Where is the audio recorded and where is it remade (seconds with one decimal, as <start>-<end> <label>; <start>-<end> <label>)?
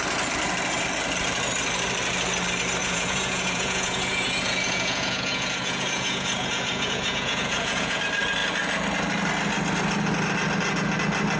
0.0-2.8 recorded; 2.8-8.0 remade; 8.0-11.4 recorded